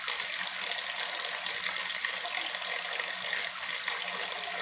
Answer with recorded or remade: recorded